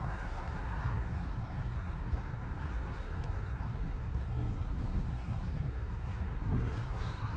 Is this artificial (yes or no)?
yes